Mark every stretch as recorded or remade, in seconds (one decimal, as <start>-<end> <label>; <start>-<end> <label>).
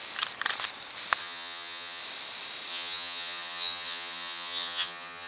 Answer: 0.0-1.2 recorded; 1.2-2.0 remade; 2.0-2.7 recorded; 2.7-5.3 remade